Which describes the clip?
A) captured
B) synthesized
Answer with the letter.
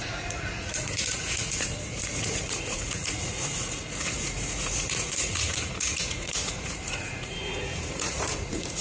B